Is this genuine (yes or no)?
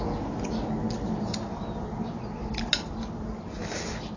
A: yes